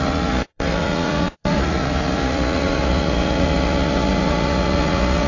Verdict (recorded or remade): remade